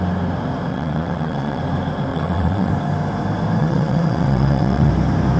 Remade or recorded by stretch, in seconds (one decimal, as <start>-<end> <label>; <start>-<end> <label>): 0.0-0.7 recorded; 0.7-1.6 remade; 1.6-2.1 recorded; 2.1-2.7 remade; 2.7-3.6 recorded; 3.6-4.9 remade; 4.9-5.4 recorded